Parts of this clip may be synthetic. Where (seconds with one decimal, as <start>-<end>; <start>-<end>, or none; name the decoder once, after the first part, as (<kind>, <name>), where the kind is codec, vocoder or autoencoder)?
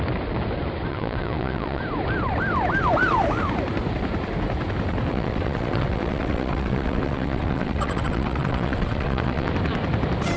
0.9-1.8 (vocoder, WaveNeXt); 5.1-9.5